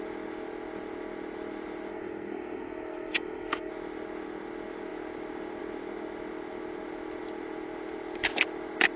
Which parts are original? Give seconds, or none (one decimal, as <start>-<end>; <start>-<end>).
0.0-1.9; 3.7-9.0

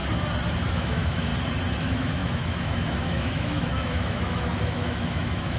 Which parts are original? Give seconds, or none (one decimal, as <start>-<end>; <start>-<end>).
0.0-0.7; 1.3-1.8